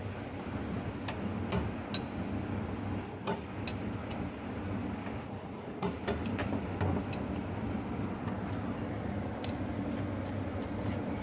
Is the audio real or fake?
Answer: real